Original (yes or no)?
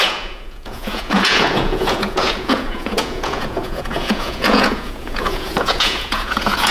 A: no